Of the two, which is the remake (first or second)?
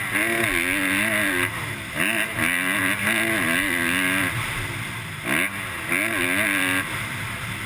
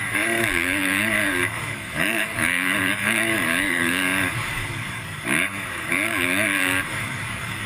second